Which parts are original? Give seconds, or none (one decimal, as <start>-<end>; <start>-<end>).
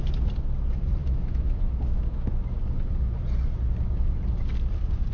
0.0-1.0; 2.3-5.1